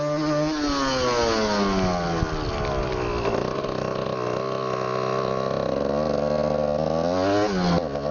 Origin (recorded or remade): recorded